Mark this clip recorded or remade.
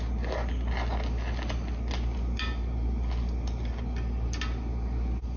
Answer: recorded